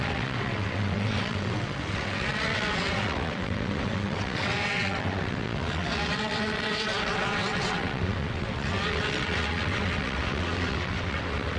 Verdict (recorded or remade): remade